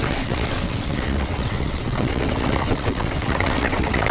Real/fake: fake